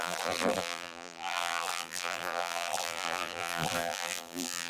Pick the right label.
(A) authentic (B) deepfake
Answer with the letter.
B